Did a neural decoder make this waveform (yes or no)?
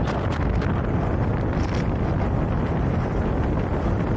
no